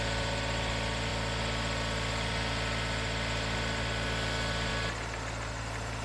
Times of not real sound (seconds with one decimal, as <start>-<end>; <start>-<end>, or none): none